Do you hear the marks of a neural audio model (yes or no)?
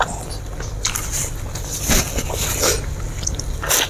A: no